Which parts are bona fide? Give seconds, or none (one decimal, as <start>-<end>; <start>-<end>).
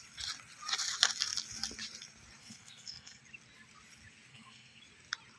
0.0-2.4; 3.2-4.3; 4.8-5.4